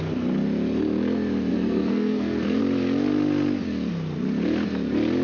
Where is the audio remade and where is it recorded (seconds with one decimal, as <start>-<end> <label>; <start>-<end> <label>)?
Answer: 0.0-1.5 recorded; 1.5-2.6 remade; 2.6-5.2 recorded

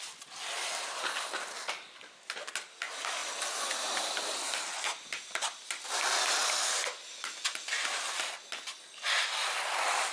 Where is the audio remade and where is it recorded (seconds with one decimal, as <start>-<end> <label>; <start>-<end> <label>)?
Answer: 0.0-10.1 recorded